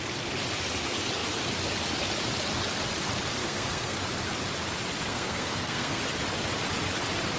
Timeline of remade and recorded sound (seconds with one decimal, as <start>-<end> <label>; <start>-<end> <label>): 0.0-3.4 recorded; 3.4-4.0 remade; 4.0-5.1 recorded; 5.1-6.0 remade; 6.0-7.4 recorded